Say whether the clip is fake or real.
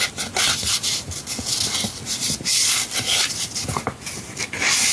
real